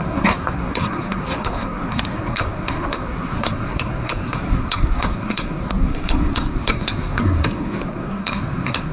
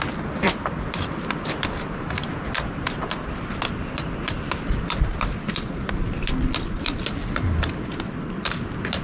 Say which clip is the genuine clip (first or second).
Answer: second